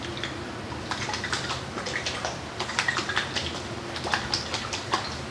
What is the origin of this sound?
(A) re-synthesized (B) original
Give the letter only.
B